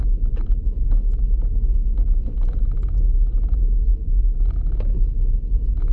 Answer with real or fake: real